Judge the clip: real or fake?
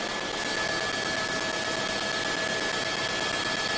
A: real